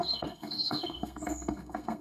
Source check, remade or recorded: remade